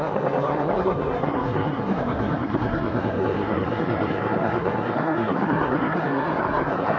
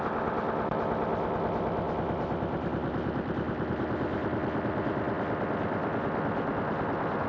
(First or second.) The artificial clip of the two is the first